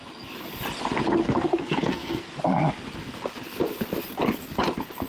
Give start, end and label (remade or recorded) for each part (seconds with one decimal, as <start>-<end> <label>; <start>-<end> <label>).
0.0-1.2 recorded; 1.2-2.4 remade; 2.4-5.1 recorded